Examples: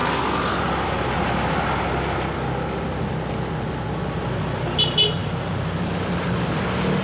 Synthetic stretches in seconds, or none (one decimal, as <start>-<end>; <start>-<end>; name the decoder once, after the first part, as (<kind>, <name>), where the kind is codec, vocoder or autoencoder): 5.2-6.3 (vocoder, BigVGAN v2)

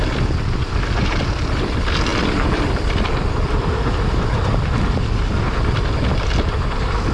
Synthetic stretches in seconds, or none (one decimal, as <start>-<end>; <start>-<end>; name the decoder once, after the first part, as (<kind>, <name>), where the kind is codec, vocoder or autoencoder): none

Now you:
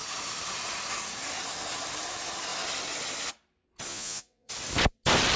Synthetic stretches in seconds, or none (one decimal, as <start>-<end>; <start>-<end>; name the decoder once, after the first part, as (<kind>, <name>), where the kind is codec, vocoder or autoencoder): 3.9-4.5 (vocoder, Vocos)

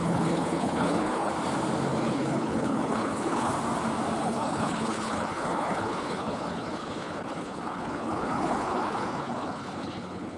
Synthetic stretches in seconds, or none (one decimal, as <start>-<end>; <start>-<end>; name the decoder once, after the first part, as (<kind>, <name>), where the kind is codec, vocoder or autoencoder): 0.0-1.3 (codec, HILCodec); 2.0-3.5; 4.2-10.4

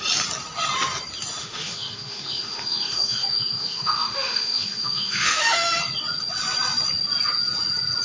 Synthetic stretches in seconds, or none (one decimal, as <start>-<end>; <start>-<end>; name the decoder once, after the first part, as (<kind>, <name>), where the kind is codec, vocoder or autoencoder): 1.4-5.8 (autoencoder, DAC-VAE)

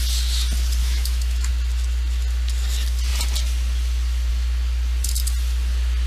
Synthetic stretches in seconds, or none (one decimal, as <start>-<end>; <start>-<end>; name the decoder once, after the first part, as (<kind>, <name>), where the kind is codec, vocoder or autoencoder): 0.8-1.5 (autoencoder, DAC-VAE)

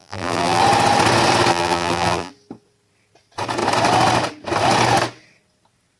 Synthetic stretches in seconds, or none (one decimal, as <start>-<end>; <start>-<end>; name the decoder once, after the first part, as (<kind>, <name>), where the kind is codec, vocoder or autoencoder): 0.0-0.6 (vocoder, BigVGAN v2); 1.5-2.3